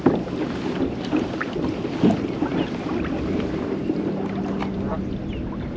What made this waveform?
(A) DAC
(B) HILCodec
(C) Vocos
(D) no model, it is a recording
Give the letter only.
D